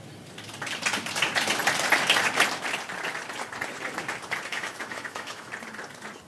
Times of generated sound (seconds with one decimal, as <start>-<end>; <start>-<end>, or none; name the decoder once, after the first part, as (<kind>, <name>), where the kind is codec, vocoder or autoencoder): 4.5-5.5 (autoencoder, DAC-VAE)